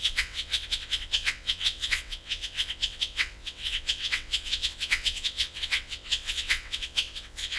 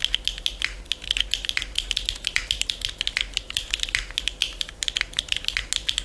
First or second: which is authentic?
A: second